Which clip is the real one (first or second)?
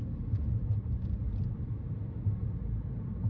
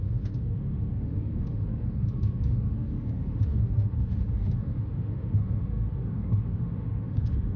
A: first